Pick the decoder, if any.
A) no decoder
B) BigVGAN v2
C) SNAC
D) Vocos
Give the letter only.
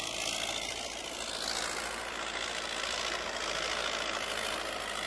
A